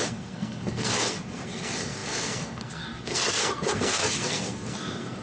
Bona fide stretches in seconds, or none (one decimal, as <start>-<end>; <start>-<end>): none

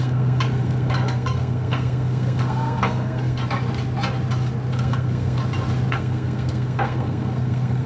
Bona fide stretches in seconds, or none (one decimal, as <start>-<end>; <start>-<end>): 3.4-4.7; 5.4-5.9

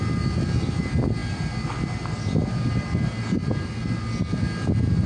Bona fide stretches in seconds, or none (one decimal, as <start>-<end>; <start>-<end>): 0.0-5.1

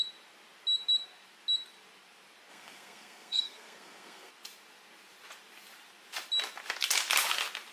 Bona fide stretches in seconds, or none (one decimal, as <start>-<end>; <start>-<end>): 0.0-2.5; 4.3-7.7